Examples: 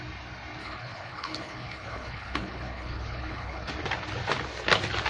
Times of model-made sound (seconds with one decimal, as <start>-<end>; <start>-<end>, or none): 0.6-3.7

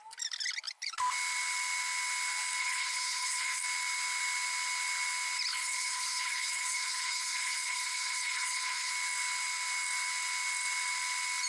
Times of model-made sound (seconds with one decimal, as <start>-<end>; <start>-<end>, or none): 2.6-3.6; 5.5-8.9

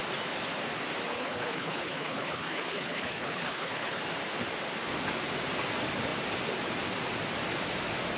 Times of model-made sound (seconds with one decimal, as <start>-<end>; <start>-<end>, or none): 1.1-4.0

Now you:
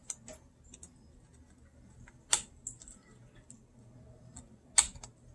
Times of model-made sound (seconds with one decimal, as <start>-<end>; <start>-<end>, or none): none